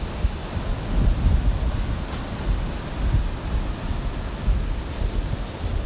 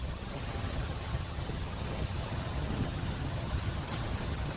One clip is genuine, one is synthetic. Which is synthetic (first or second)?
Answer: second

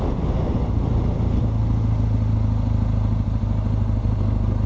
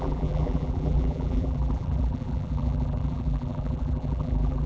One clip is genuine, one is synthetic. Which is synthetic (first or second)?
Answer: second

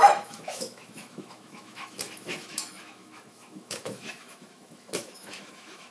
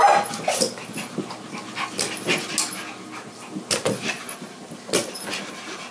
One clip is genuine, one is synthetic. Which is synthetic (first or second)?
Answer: first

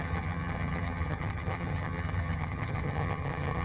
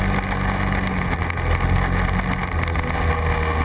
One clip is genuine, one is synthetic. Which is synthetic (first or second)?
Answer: first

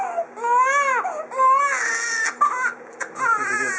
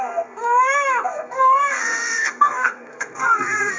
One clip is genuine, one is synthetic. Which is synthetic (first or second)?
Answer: second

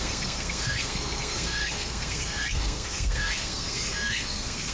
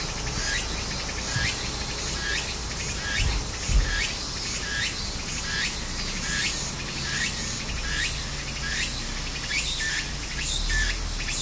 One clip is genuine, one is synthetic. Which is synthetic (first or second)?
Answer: first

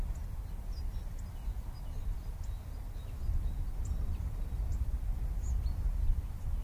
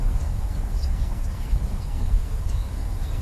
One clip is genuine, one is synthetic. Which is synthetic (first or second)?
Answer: second